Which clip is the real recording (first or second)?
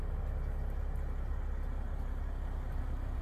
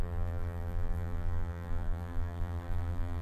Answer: first